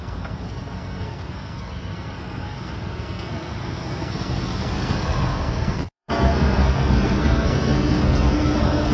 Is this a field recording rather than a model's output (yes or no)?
no